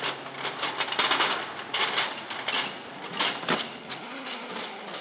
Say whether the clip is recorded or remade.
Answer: recorded